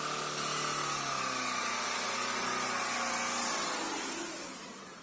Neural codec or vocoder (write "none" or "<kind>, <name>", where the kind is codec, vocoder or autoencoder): none